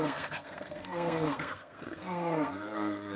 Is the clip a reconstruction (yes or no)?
yes